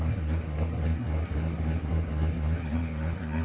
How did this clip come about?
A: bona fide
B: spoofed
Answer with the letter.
B